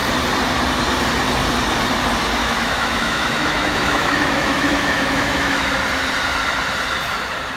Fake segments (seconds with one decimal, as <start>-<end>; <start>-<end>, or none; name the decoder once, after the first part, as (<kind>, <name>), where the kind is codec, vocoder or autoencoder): 2.4-5.7 (autoencoder, DAC-VAE)